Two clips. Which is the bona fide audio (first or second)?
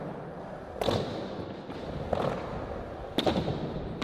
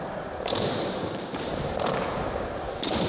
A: first